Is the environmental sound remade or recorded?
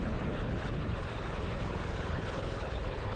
remade